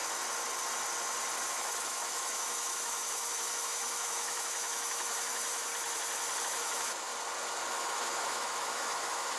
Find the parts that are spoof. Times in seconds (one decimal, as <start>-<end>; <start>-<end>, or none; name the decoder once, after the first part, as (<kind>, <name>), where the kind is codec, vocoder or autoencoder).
1.5-5.7 (autoencoder, DAC-VAE); 6.4-7.1; 7.7-9.4